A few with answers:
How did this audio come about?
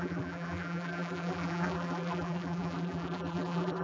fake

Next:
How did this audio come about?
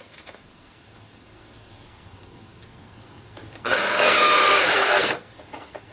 fake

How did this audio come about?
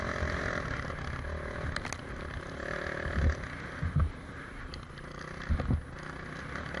real